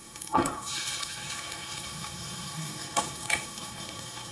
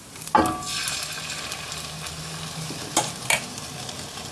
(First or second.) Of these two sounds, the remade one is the first